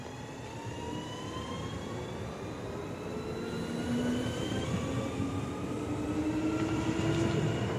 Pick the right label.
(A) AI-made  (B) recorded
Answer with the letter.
B